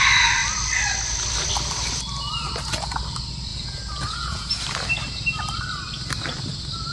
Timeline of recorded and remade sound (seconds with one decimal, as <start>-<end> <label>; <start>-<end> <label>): 0.0-3.5 recorded; 3.5-4.6 remade; 4.6-6.9 recorded

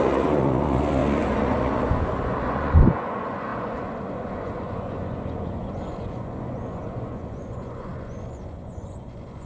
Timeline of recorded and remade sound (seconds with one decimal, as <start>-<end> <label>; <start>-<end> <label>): 0.0-9.5 remade

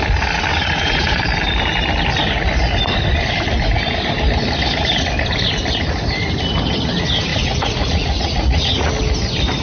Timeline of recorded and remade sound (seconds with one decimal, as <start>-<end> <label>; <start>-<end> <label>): 0.0-0.5 recorded; 0.5-1.2 remade; 1.2-7.3 recorded; 7.3-8.9 remade; 8.9-9.6 recorded

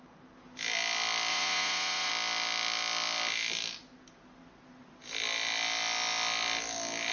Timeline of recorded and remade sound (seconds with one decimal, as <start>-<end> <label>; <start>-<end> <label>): 0.0-1.3 recorded; 1.3-2.1 remade; 2.1-7.1 recorded

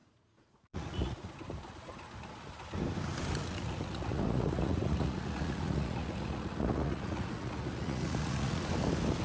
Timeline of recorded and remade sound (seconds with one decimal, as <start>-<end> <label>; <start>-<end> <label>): 0.0-1.3 remade; 1.3-3.4 recorded; 3.4-8.7 remade; 8.7-9.2 recorded

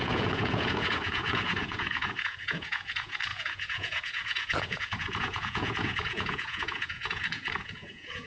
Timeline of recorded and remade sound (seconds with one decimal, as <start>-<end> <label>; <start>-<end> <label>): 0.0-8.3 remade